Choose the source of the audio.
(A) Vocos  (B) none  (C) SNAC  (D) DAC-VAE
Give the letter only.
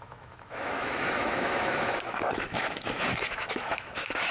D